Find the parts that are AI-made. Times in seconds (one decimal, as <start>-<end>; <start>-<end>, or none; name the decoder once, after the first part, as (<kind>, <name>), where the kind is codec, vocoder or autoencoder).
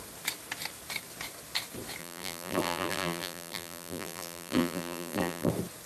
2.0-5.5 (vocoder, BigVGAN v2)